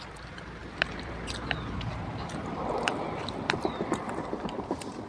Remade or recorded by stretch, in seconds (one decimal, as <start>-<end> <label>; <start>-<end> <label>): 0.0-3.2 recorded; 3.2-4.3 remade; 4.3-5.1 recorded